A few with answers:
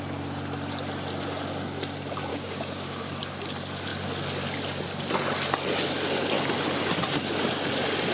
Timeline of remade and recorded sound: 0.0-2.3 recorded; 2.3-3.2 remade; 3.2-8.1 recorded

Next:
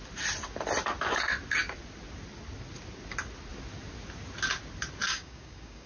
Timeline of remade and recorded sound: 0.0-5.1 recorded; 5.1-5.9 remade

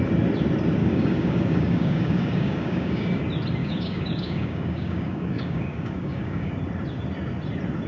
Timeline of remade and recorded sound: 0.0-0.8 recorded; 0.8-3.2 remade; 3.2-3.6 recorded; 3.6-6.5 remade; 6.5-7.9 recorded

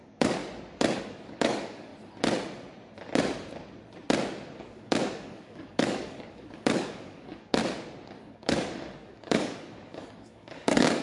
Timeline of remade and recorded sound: 0.0-0.4 remade; 0.4-1.0 recorded; 1.0-1.9 remade; 1.9-4.6 recorded; 4.6-7.6 remade; 7.6-8.2 recorded; 8.2-11.0 remade